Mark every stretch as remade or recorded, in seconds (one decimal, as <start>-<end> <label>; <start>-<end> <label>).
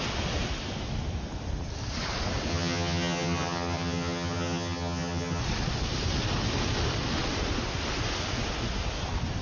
0.0-2.5 recorded; 2.5-5.4 remade; 5.4-9.4 recorded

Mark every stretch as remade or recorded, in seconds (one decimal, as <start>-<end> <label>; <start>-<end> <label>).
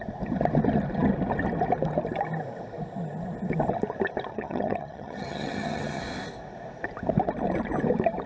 0.0-4.3 recorded; 4.3-6.0 remade; 6.0-8.3 recorded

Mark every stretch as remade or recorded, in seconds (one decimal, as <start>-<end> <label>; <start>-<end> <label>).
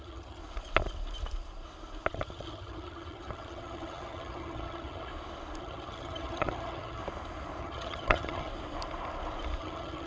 0.0-0.4 remade; 0.4-2.1 recorded; 2.1-5.1 remade; 5.1-5.6 recorded; 5.6-7.0 remade; 7.0-7.6 recorded; 7.6-8.5 remade; 8.5-9.6 recorded; 9.6-10.1 remade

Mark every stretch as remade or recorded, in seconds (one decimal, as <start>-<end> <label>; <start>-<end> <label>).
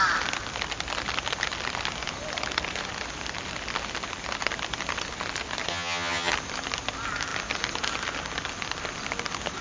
0.0-5.7 recorded; 5.7-6.3 remade; 6.3-9.6 recorded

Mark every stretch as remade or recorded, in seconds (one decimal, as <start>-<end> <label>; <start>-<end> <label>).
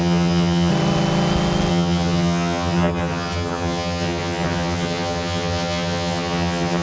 0.0-0.7 remade; 0.7-1.7 recorded; 1.7-6.8 remade